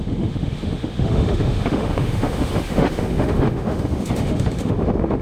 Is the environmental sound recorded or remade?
remade